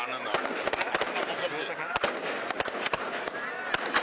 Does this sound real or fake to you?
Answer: real